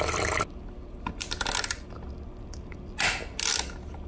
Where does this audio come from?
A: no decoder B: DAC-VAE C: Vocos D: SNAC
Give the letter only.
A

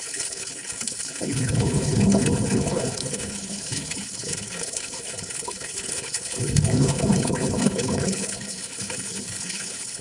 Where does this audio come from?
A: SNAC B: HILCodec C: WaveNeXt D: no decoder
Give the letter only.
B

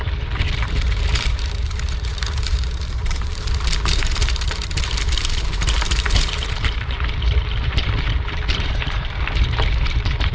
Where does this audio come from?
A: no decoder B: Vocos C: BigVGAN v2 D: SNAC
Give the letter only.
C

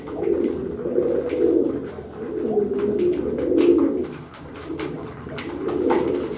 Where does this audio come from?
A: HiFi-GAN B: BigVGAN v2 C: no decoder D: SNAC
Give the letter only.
C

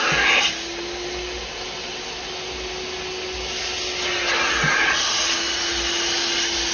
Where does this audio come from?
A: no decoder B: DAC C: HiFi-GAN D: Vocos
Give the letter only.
A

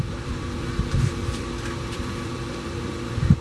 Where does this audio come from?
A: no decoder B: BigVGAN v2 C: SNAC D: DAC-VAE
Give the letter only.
B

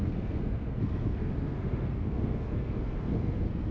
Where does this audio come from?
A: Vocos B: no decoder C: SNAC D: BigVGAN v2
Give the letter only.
C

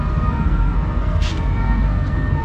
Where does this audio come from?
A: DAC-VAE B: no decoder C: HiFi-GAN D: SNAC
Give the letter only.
D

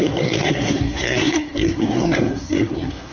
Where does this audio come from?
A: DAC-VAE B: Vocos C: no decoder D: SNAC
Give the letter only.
D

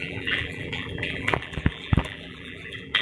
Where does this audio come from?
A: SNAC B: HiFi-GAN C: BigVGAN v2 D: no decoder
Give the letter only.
C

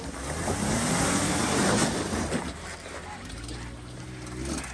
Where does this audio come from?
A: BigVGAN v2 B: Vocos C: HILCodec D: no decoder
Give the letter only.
D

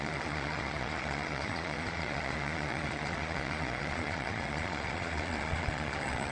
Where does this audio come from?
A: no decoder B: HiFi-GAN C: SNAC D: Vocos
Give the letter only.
D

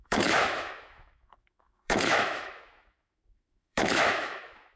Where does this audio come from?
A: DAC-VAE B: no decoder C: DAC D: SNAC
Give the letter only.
A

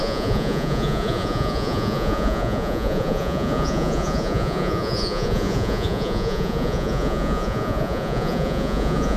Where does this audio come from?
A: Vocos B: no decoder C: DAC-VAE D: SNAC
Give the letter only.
A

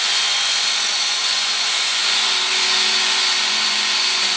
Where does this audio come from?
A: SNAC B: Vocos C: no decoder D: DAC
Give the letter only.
B